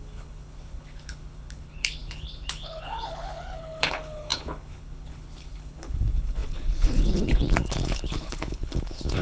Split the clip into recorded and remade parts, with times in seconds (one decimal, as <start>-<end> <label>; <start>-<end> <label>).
0.0-9.2 remade